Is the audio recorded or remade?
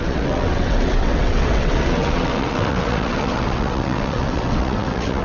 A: remade